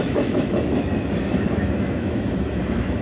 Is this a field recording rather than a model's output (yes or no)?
no